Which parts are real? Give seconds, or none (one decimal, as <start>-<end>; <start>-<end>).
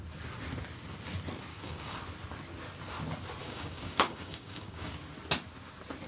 0.0-1.5; 2.0-3.4; 4.9-6.1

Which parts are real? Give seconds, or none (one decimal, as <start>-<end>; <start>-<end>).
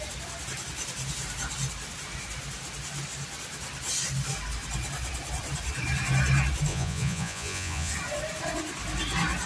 0.0-6.7; 7.9-9.5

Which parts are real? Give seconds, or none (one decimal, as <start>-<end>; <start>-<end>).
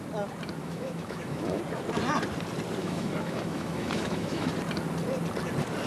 0.0-0.6; 1.6-2.8; 4.5-5.9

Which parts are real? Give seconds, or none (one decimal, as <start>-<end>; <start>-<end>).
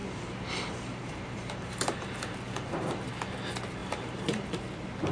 3.1-3.8; 4.6-5.1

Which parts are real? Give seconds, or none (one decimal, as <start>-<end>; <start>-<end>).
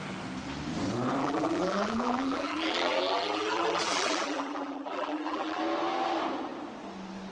0.0-1.2; 5.6-7.3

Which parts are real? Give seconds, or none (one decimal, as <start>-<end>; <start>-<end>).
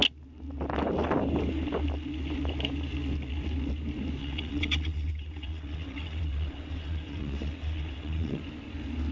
0.0-4.2; 8.4-9.1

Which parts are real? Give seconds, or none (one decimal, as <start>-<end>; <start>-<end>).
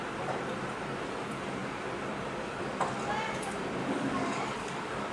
0.0-3.8